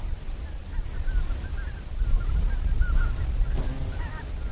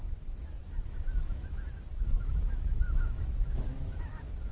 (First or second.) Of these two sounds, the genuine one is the first